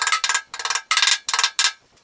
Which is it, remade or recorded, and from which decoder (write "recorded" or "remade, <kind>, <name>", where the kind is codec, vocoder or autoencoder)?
recorded